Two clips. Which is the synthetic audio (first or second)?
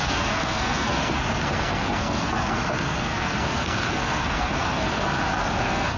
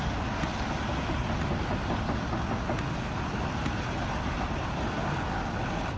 first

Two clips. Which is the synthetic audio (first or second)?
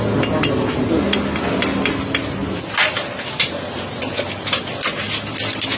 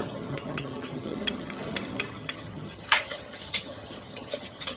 second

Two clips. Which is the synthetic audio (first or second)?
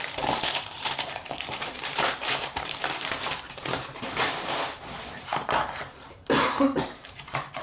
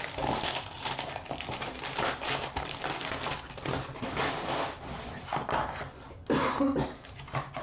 first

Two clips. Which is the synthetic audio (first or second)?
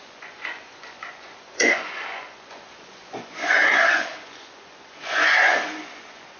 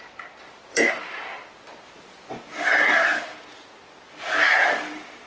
first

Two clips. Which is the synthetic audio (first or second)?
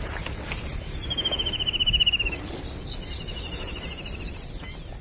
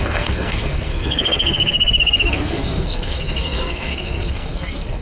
second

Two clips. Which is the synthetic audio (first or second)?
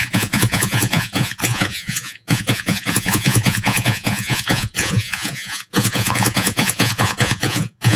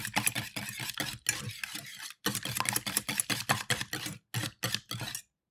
first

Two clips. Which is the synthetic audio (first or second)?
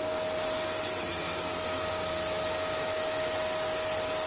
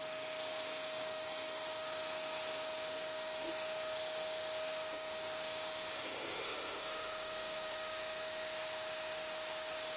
second